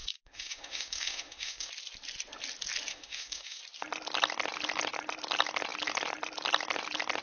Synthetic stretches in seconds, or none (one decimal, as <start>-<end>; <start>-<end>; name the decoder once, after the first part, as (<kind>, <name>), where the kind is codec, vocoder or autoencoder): 0.0-1.7 (autoencoder, DAC-VAE); 2.9-3.6